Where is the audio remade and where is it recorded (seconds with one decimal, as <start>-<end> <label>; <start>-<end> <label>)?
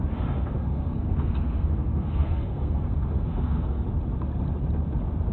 0.0-0.6 recorded; 0.6-3.8 remade; 3.8-5.3 recorded